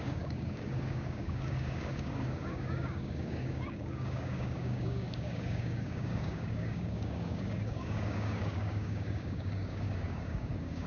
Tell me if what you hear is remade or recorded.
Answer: remade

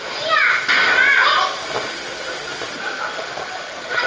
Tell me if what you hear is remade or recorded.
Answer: recorded